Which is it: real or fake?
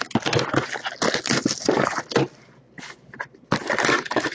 real